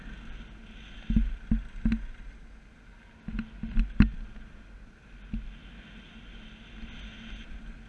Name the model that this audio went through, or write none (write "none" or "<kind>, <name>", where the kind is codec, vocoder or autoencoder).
none